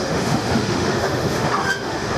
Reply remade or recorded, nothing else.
remade